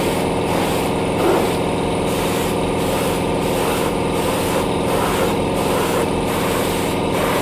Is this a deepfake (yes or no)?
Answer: yes